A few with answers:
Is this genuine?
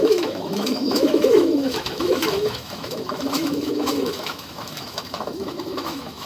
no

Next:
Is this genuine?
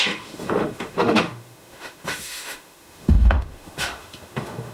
no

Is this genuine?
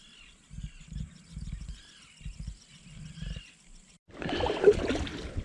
yes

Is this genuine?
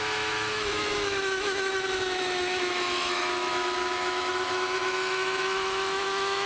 no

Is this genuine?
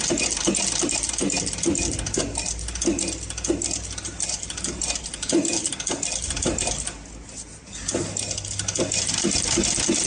yes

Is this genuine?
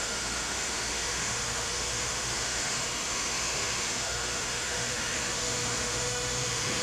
no